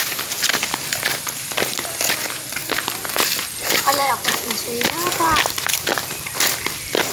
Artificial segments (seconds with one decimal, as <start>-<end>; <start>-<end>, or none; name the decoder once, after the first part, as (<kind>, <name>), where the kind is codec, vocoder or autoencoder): 0.0-7.1 (vocoder, BigVGAN v2)